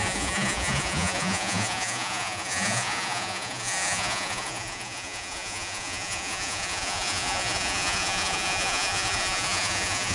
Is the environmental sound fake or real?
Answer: fake